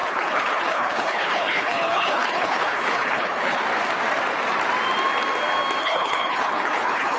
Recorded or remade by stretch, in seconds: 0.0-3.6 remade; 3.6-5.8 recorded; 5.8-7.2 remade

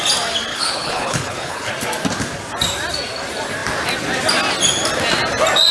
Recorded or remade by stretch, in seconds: 0.0-0.5 recorded; 0.5-1.7 remade; 1.7-5.7 recorded

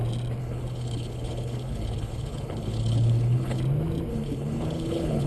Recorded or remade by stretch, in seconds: 0.0-0.4 recorded; 0.4-3.6 remade; 3.6-4.1 recorded; 4.1-5.3 remade

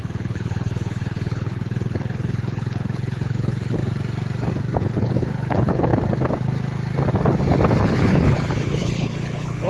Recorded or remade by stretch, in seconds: 0.0-3.8 remade; 3.8-4.8 recorded; 4.8-5.9 remade; 5.9-7.8 recorded; 7.8-9.7 remade

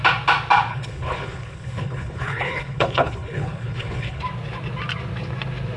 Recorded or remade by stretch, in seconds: 0.0-0.7 recorded; 0.7-4.2 remade; 4.2-5.8 recorded

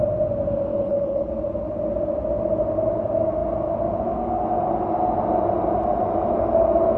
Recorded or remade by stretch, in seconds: 0.0-0.7 recorded; 0.7-1.3 remade; 1.3-7.0 recorded